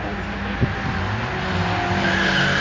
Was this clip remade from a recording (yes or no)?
no